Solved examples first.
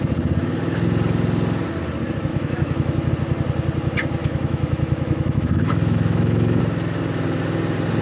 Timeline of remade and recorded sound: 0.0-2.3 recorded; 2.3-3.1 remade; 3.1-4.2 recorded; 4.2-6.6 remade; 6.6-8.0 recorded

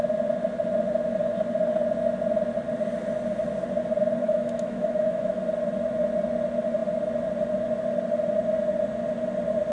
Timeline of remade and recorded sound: 0.0-4.2 recorded; 4.2-5.4 remade; 5.4-9.7 recorded

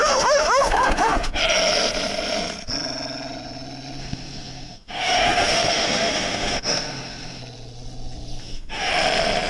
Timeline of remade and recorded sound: 0.0-1.4 remade; 1.4-4.0 recorded; 4.0-7.4 remade; 7.4-8.4 recorded; 8.4-8.9 remade; 8.9-9.5 recorded

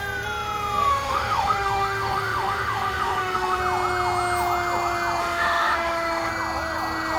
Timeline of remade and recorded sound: 0.0-0.9 recorded; 0.9-3.6 remade; 3.6-5.2 recorded; 5.2-6.3 remade; 6.3-7.2 recorded

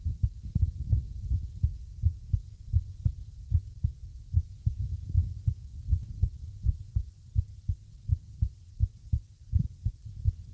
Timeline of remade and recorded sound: 0.0-4.1 recorded; 4.1-5.8 remade; 5.8-10.5 recorded

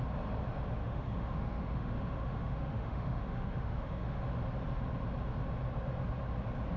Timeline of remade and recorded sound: 0.0-0.8 recorded; 0.8-4.2 remade; 4.2-6.8 recorded

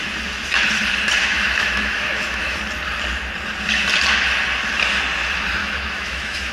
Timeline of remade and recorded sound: 0.0-1.2 recorded; 1.2-2.6 remade; 2.6-5.6 recorded; 5.6-6.5 remade